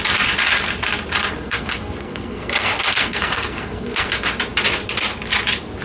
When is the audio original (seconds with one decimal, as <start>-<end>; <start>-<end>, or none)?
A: 0.0-1.3; 4.1-5.8